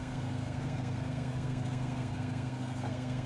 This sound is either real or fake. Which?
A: fake